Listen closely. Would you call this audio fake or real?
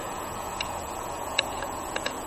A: fake